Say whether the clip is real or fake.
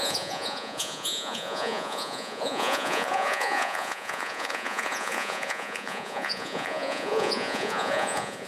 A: fake